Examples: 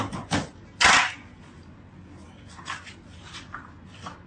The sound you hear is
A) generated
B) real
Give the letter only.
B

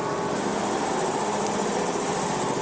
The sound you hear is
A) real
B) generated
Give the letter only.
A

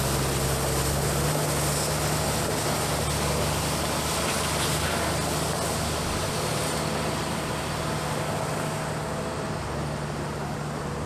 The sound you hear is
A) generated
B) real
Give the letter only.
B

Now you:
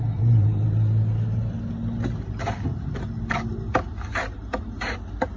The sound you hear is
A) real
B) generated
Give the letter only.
A